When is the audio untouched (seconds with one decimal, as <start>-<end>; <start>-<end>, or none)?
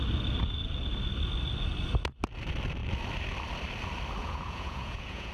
0.0-4.2